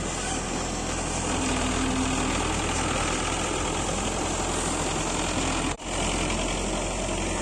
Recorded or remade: recorded